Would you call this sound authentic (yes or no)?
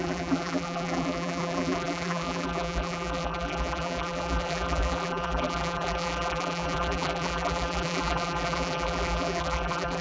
no